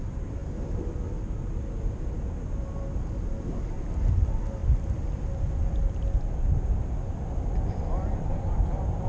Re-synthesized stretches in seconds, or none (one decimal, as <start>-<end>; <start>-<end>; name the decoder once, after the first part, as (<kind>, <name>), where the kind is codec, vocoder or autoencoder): none